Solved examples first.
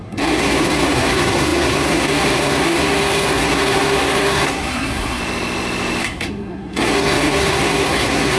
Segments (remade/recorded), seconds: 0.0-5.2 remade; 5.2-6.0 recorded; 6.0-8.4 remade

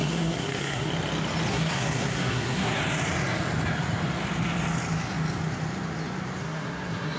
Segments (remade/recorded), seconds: 0.0-0.9 remade; 0.9-1.5 recorded; 1.5-2.8 remade; 2.8-6.4 recorded; 6.4-7.2 remade

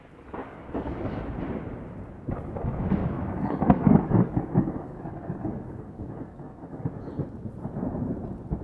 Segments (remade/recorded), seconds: 0.0-0.4 recorded; 0.4-1.2 remade; 1.2-3.0 recorded; 3.0-7.1 remade; 7.1-8.6 recorded

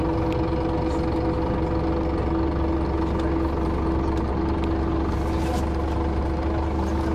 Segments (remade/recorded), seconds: 0.0-7.1 recorded

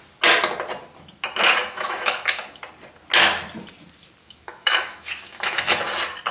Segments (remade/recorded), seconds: 0.0-1.6 recorded; 1.6-2.6 remade; 2.6-4.2 recorded; 4.2-5.8 remade; 5.8-6.3 recorded

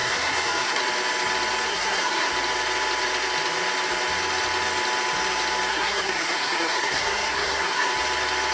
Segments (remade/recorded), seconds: 0.0-0.8 remade; 0.8-1.7 recorded; 1.7-2.3 remade; 2.3-5.7 recorded; 5.7-7.9 remade; 7.9-8.5 recorded

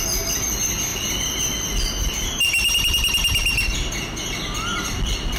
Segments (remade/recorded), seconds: 0.0-0.9 recorded; 0.9-3.9 remade; 3.9-5.4 recorded